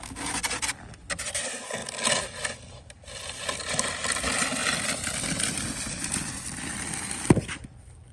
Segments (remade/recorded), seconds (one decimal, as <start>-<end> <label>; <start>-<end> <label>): 0.0-8.1 recorded